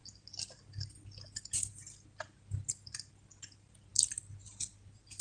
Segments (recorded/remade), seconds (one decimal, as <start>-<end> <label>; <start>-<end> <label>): 0.0-5.2 recorded